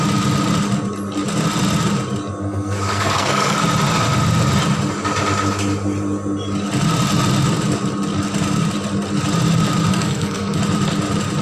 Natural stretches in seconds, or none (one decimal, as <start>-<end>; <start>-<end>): 0.0-2.4; 3.6-9.9; 10.6-11.4